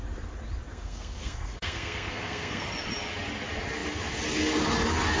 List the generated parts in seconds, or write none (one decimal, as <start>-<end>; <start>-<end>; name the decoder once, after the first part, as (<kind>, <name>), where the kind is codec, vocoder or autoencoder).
0.7-2.6 (codec, SNAC)